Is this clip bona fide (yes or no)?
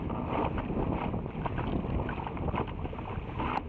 yes